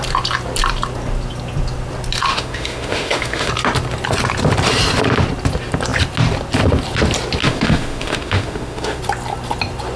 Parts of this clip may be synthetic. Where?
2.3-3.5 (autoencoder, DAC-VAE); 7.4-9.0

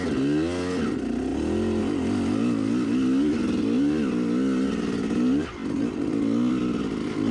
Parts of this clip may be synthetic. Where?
none

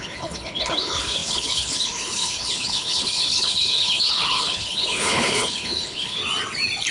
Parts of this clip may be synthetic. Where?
0.0-6.2 (codec, HILCodec)

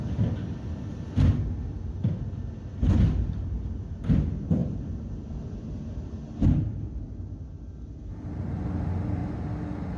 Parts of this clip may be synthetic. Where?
none

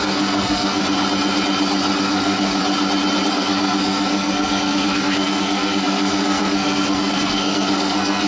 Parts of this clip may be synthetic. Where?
0.0-0.8 (codec, SNAC); 2.0-2.6; 3.3-8.3

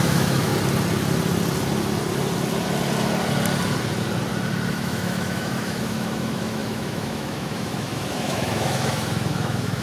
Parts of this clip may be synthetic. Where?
0.0-0.5 (autoencoder, DAC-VAE); 4.7-9.8

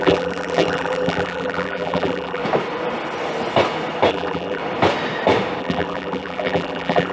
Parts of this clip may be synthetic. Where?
0.0-2.4 (vocoder, BigVGAN v2); 4.1-4.6; 5.6-7.1

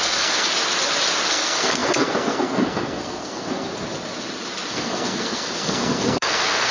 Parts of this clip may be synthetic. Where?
0.0-0.5 (codec, SNAC); 1.3-3.7; 4.7-6.7